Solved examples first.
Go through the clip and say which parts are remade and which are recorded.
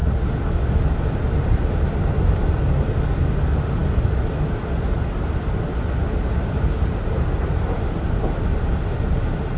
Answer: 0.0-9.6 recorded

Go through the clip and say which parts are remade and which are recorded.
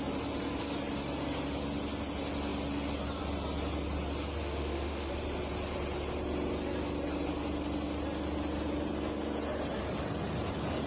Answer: 0.0-4.4 recorded; 4.4-5.1 remade; 5.1-10.9 recorded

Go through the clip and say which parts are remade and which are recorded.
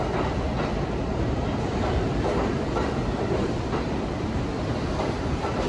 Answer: 0.0-1.7 recorded; 1.7-4.7 remade; 4.7-5.7 recorded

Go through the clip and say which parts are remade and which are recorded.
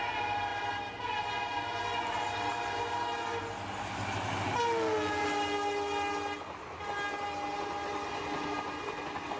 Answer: 0.0-9.4 recorded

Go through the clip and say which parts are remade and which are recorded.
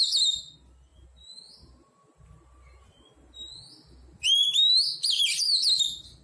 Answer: 0.0-6.2 recorded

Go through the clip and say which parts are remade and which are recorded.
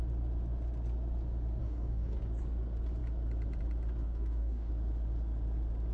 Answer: 0.0-1.6 recorded; 1.6-2.2 remade; 2.2-4.0 recorded; 4.0-4.7 remade; 4.7-5.9 recorded